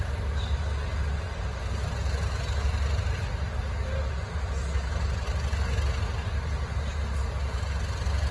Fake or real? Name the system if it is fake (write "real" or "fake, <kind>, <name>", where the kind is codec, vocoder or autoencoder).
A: real